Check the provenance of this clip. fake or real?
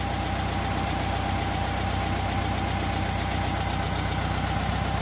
real